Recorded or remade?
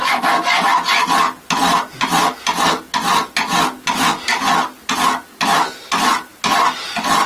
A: recorded